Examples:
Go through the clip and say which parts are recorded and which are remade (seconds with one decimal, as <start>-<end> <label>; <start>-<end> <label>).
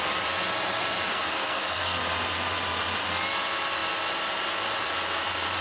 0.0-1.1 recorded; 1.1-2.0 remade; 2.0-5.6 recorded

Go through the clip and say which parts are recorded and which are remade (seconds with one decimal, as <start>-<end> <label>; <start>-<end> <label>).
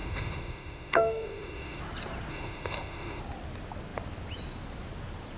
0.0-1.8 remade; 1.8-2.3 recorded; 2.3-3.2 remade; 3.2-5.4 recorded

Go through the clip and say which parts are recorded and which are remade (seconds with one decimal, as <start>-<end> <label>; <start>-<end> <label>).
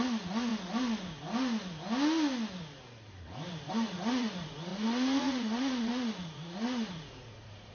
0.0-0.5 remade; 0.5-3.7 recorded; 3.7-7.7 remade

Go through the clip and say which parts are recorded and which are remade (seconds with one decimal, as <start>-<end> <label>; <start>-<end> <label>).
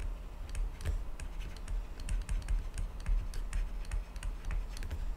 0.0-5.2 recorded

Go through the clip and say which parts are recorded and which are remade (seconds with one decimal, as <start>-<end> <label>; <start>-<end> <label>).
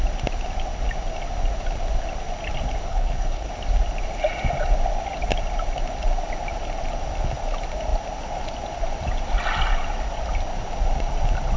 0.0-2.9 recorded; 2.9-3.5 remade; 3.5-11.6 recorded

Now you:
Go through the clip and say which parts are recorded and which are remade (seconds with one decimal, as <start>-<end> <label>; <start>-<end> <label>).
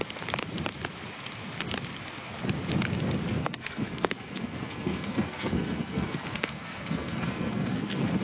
0.0-3.4 recorded; 3.4-8.2 remade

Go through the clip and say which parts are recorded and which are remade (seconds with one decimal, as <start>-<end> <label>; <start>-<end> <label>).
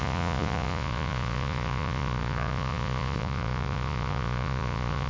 0.0-5.1 remade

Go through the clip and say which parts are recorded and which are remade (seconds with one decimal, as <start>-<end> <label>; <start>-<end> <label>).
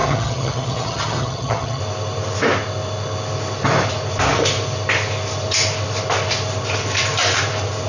0.0-1.8 remade; 1.8-7.9 recorded